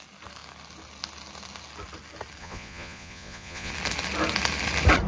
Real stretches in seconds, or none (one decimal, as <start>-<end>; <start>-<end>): 0.0-2.4; 3.7-5.1